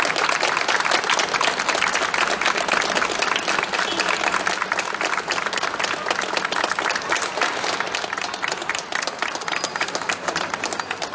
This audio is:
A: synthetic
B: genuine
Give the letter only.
B